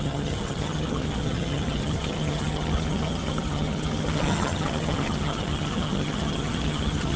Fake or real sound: fake